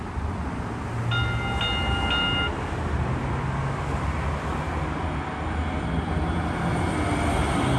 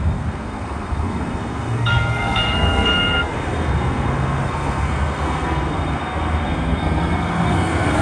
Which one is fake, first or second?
second